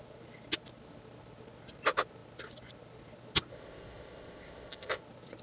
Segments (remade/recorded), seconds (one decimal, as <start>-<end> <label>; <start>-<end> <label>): 0.0-3.5 recorded; 3.5-5.0 remade; 5.0-5.4 recorded